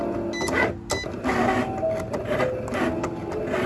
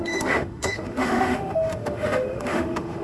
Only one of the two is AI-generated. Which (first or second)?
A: second